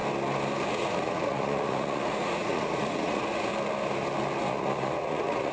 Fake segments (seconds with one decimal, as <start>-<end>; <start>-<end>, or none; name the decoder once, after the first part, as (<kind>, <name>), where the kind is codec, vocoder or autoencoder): 0.7-3.5 (vocoder, Vocos); 4.4-5.5